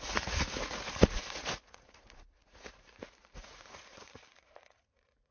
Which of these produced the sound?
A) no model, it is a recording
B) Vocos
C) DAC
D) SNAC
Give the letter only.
B